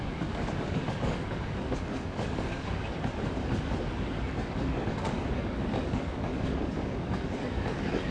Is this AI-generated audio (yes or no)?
yes